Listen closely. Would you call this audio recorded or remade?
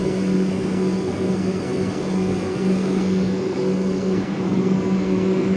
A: remade